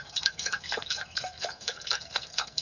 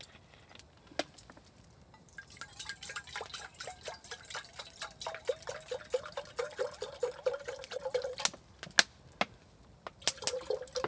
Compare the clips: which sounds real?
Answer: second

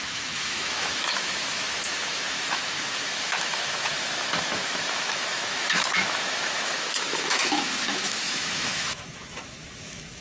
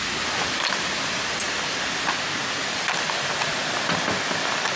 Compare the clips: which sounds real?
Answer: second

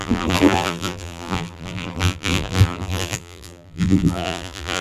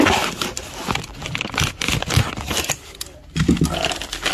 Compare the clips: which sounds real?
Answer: second